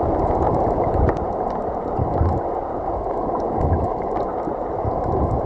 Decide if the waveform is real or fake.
fake